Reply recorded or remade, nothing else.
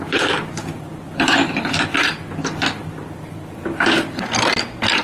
remade